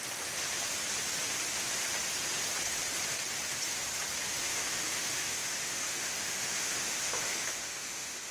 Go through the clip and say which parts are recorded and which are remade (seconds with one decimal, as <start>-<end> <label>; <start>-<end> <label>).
0.0-4.4 recorded; 4.4-8.3 remade